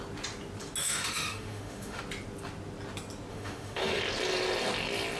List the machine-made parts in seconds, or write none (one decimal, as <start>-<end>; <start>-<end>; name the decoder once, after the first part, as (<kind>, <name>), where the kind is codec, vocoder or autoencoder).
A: 0.8-2.0 (autoencoder, DAC-VAE); 3.3-4.0